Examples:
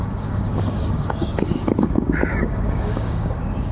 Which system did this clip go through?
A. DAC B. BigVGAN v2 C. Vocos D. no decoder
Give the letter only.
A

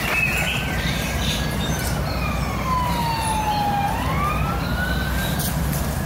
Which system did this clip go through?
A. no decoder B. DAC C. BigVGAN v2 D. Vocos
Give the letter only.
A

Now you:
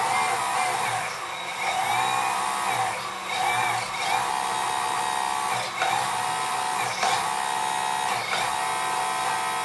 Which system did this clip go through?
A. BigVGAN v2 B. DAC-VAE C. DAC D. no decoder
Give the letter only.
D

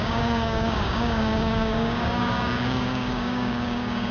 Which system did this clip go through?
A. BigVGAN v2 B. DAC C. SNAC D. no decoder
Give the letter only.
B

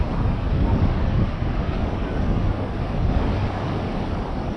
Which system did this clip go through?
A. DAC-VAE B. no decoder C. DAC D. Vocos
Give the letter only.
C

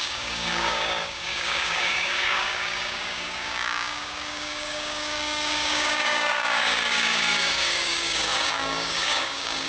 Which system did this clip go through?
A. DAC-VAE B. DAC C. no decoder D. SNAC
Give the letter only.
B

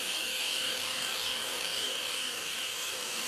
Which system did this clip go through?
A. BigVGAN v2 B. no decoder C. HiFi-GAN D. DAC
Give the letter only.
D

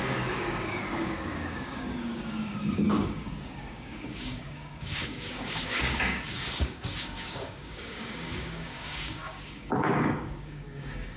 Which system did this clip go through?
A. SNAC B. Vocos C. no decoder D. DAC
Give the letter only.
D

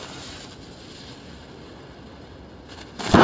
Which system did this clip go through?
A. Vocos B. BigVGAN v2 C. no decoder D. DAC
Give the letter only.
C